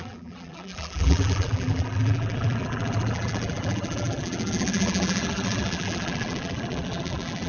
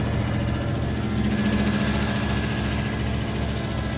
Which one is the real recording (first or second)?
second